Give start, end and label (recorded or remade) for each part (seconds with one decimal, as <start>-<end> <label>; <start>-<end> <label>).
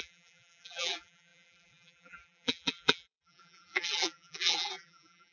0.0-5.3 remade